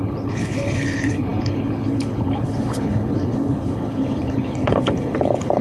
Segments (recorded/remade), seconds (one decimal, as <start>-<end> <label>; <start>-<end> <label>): 0.0-5.6 remade